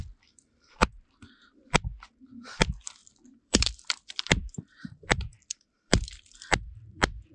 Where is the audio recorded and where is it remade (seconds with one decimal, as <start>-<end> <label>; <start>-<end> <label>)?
0.0-3.0 recorded; 3.0-7.3 remade